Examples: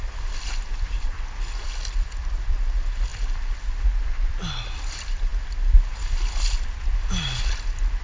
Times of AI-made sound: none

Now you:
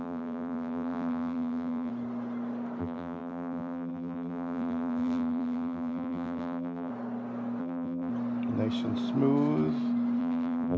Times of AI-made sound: 0.0-1.9 (vocoder, BigVGAN v2); 2.8-6.9; 7.6-8.1; 10.2-10.8

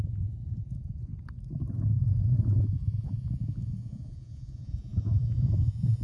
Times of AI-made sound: 0.0-1.1 (vocoder, Vocos); 2.4-6.0

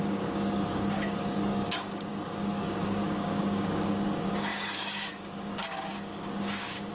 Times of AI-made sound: 0.0-6.9 (codec, DAC)

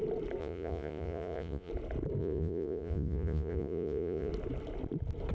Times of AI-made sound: 0.4-1.7 (vocoder, Vocos); 2.2-4.3